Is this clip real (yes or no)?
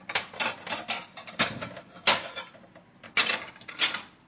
yes